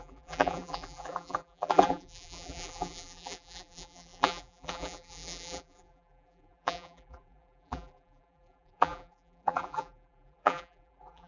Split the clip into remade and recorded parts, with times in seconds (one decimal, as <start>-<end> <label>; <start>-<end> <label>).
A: 0.0-11.3 remade